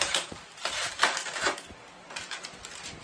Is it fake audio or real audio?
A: real